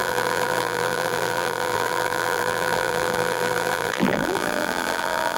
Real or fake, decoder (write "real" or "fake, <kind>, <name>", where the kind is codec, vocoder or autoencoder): fake, vocoder, BigVGAN v2